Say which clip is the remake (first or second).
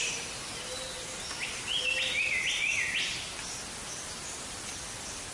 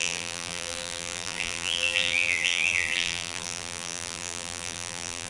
second